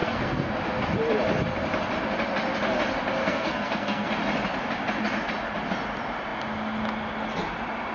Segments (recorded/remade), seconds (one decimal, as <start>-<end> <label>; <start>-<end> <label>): 0.0-0.5 remade; 0.5-3.2 recorded; 3.2-4.1 remade; 4.1-7.9 recorded